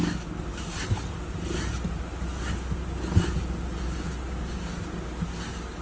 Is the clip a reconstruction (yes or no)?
no